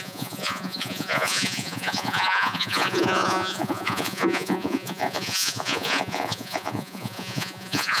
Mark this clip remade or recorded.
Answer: remade